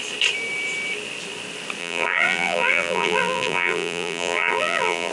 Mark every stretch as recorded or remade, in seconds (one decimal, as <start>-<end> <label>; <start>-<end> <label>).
0.0-1.8 recorded; 1.8-5.1 remade